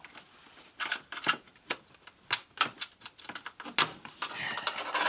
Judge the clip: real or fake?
real